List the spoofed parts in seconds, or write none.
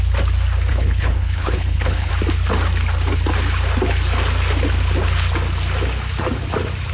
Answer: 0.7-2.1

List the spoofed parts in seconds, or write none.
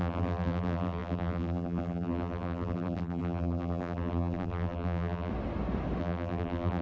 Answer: 0.0-5.3; 6.0-6.8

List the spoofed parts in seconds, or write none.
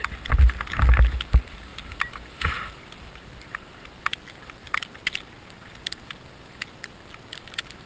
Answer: none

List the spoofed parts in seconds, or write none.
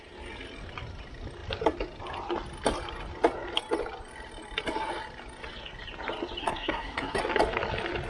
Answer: 6.4-7.2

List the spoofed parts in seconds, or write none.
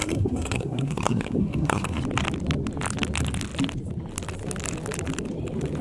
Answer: 0.0-2.0